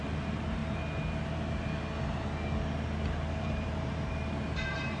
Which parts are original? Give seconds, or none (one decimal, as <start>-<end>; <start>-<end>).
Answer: 0.6-3.4

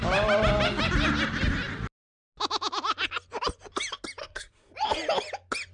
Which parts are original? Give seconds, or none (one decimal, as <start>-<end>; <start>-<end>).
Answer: 0.0-4.2; 4.7-5.7

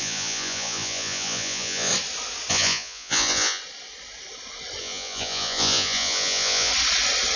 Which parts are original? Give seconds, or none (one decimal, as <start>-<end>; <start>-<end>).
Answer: 1.9-2.5; 3.6-4.8; 6.7-7.4

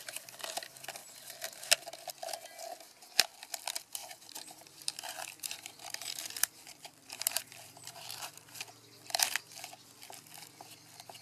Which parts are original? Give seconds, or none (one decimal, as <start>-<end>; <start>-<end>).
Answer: 0.0-4.0; 8.6-11.2

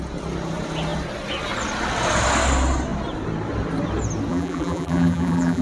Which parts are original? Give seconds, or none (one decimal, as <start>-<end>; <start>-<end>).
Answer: 0.0-4.3